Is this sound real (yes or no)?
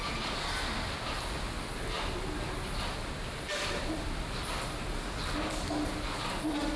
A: yes